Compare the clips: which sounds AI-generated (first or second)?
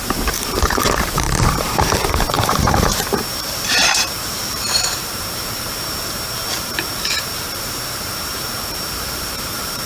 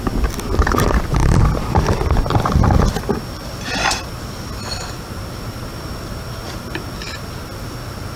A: first